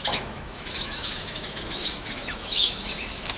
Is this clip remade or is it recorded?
remade